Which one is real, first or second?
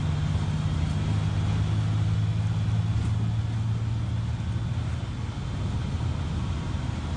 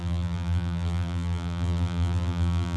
first